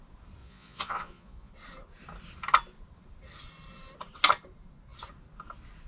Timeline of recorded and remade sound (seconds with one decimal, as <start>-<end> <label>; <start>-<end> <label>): 0.0-0.4 recorded; 0.4-1.5 remade; 1.5-5.9 recorded